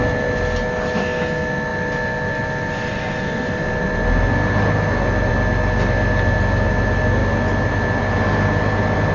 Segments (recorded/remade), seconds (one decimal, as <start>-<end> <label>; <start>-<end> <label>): 0.0-9.1 recorded